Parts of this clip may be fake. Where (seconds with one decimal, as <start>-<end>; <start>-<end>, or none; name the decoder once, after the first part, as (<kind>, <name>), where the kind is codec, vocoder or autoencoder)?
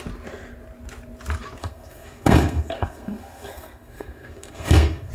1.6-5.1 (codec, SNAC)